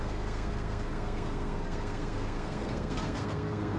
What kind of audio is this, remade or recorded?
remade